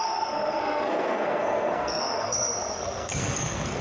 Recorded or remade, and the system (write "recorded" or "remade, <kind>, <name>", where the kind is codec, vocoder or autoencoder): remade, codec, SNAC